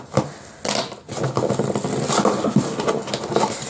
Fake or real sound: real